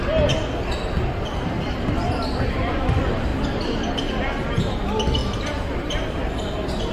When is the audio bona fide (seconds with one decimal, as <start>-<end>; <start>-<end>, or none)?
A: 0.0-5.2; 6.2-6.9